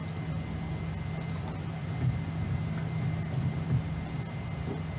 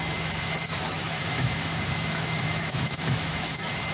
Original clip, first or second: first